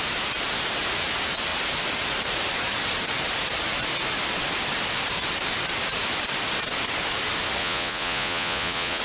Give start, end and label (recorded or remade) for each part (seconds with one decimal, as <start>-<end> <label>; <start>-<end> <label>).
0.0-7.6 recorded; 7.6-9.0 remade